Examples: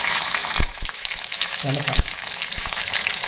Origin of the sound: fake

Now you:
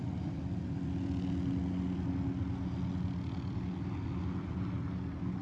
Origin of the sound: real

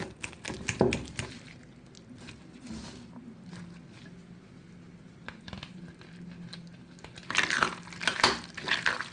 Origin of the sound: real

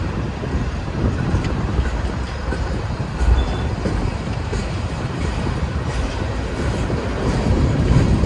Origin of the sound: fake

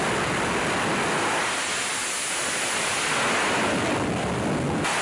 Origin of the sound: real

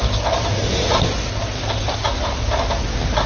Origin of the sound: real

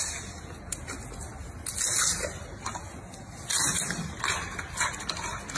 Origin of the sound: real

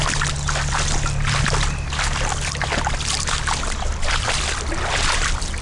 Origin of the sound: real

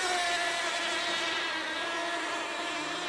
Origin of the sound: real